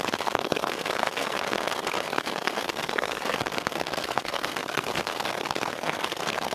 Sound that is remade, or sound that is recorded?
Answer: remade